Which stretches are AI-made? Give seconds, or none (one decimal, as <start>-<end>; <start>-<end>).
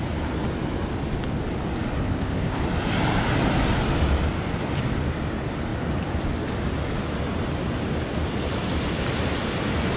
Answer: 2.0-2.6